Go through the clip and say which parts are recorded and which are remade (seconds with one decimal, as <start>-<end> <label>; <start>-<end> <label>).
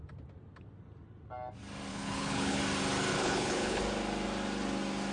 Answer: 0.0-1.9 recorded; 1.9-2.6 remade; 2.6-3.1 recorded; 3.1-3.8 remade; 3.8-5.1 recorded